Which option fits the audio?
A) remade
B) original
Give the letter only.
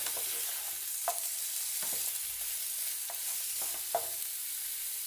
B